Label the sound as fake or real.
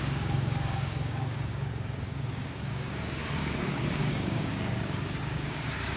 fake